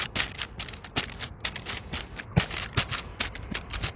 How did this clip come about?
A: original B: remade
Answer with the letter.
A